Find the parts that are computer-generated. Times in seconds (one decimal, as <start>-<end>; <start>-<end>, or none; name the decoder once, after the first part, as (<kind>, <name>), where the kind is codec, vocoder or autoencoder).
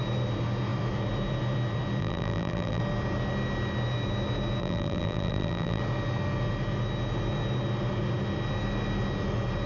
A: 2.0-2.8 (vocoder, BigVGAN v2); 4.6-5.8